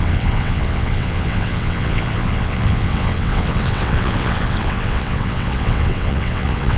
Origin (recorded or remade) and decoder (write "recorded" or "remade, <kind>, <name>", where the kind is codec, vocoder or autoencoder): remade, vocoder, WaveNeXt